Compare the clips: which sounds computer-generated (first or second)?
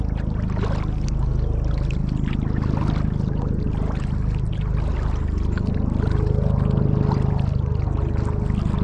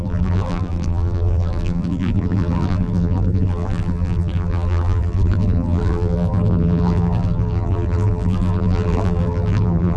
second